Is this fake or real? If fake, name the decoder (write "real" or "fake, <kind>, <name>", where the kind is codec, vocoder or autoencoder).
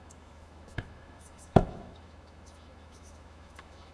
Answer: fake, autoencoder, DAC-VAE